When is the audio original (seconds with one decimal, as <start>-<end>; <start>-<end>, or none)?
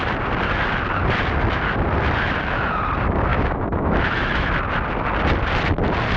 0.0-3.3; 4.5-6.2